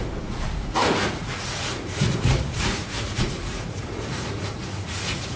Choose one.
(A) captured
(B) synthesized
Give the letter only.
B